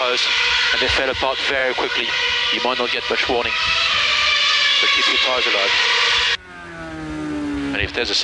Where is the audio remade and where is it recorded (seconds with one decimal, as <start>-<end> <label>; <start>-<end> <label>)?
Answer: 0.0-8.2 recorded